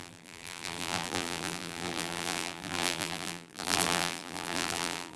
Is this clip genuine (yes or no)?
no